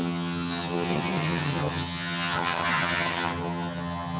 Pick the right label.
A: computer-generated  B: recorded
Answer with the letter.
A